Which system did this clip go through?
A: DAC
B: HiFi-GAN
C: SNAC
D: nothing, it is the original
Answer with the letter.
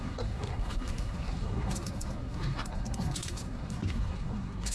C